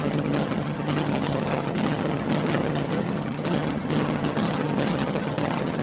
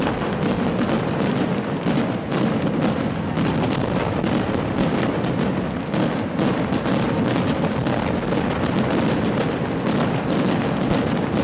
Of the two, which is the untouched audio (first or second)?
second